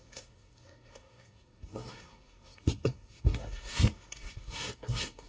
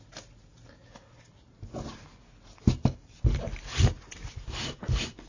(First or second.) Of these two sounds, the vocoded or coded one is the first